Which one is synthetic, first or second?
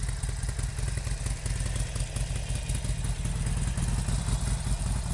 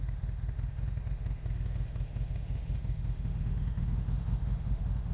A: second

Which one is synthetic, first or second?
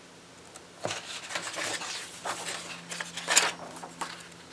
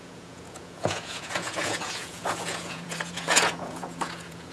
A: second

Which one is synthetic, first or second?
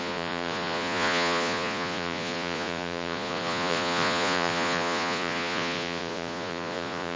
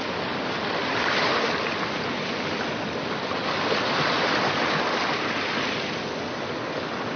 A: first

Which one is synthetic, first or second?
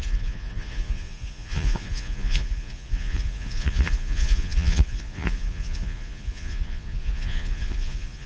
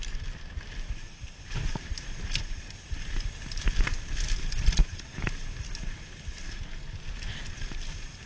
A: first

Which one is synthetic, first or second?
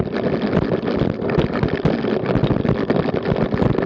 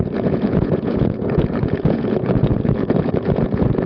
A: second